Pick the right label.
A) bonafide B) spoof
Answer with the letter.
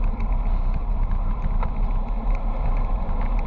A